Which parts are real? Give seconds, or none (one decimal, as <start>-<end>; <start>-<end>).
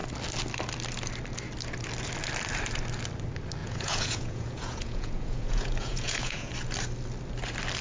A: 0.0-3.6; 6.5-7.8